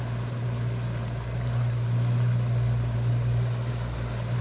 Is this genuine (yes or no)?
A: yes